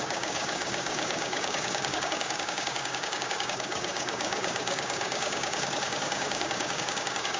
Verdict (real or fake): fake